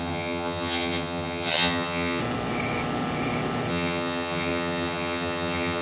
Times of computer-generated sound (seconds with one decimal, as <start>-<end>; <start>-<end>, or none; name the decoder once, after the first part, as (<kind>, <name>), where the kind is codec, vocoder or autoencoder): 0.0-2.2 (vocoder, HiFi-GAN); 3.7-5.8